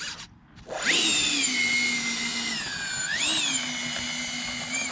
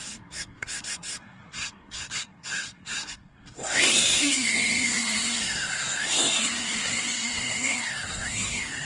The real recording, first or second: first